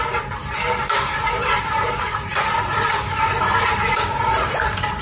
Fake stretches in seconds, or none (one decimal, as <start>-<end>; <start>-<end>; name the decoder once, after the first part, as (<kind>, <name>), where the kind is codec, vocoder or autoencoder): 0.0-5.0 (vocoder, BigVGAN v2)